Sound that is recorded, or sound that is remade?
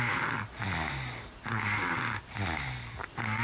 recorded